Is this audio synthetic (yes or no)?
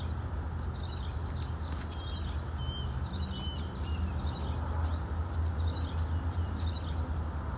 no